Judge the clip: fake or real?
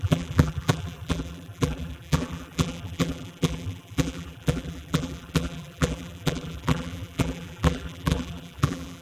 fake